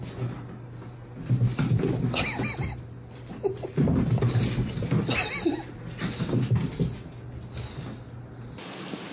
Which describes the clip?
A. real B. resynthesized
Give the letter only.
A